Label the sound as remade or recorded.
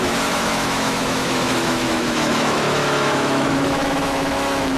remade